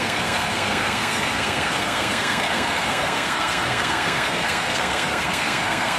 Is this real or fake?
fake